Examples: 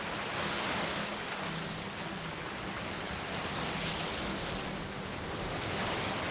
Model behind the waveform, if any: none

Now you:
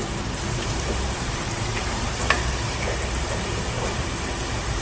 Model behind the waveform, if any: vocoder, BigVGAN v2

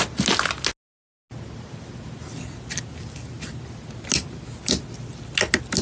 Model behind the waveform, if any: none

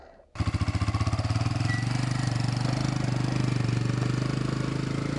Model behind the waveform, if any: none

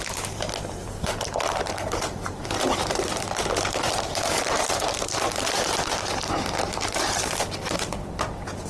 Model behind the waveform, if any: vocoder, BigVGAN v2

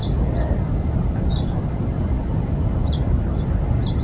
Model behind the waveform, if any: vocoder, BigVGAN v2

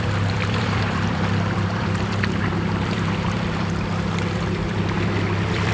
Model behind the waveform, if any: vocoder, BigVGAN v2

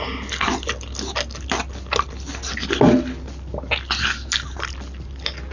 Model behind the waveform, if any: none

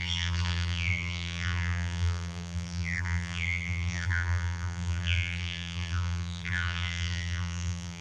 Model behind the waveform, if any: vocoder, BigVGAN v2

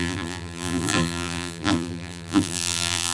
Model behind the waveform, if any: vocoder, BigVGAN v2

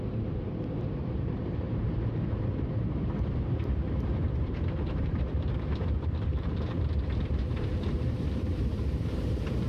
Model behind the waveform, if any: vocoder, BigVGAN v2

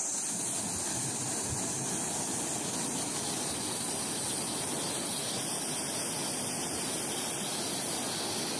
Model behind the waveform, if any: none